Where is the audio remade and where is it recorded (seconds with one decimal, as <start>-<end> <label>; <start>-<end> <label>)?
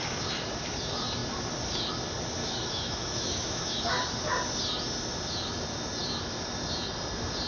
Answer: 0.0-2.4 recorded; 2.4-3.8 remade; 3.8-7.5 recorded